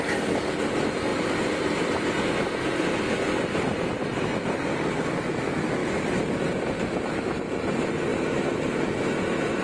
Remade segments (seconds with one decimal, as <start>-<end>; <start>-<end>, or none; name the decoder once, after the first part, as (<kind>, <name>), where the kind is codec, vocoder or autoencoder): 1.1-2.9 (vocoder, BigVGAN v2); 8.1-8.8